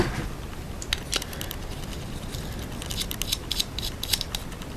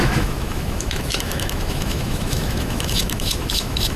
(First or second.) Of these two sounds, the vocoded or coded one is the second